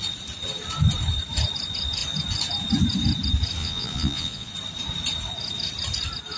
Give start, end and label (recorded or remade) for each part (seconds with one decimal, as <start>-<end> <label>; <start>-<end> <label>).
0.0-3.6 recorded; 3.6-4.5 remade; 4.5-6.4 recorded